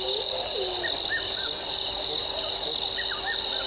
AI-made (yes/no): no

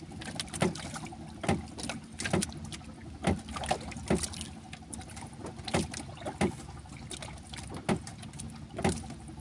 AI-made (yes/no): no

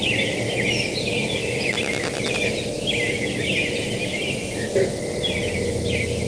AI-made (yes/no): no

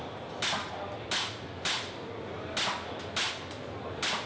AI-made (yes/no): no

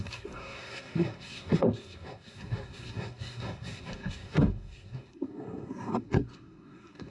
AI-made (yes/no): yes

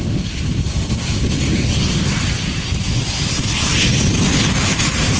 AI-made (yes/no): no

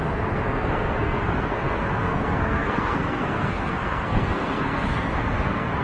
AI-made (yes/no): yes